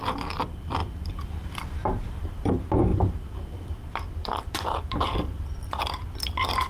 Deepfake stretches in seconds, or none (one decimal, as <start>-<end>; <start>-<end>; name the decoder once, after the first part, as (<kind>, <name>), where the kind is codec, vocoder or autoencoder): 0.0-6.7 (vocoder, BigVGAN v2)